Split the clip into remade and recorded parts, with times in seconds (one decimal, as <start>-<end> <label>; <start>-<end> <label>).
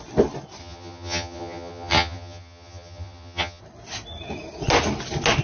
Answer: 0.0-0.6 recorded; 0.6-3.6 remade; 3.6-5.4 recorded